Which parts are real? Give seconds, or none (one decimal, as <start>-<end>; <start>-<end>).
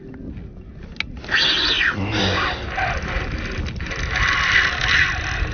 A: 0.0-5.5